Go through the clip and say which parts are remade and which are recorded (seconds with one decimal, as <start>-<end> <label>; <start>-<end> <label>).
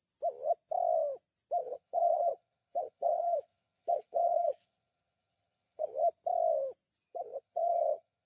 0.0-1.6 recorded; 1.6-5.9 remade; 5.9-7.1 recorded; 7.1-8.3 remade